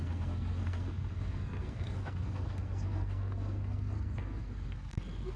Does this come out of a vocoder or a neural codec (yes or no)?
yes